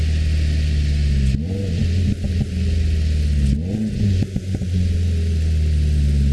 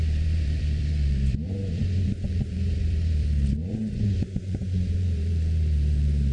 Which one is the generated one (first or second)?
second